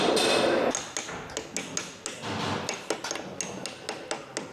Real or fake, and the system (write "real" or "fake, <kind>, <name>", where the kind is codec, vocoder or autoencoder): real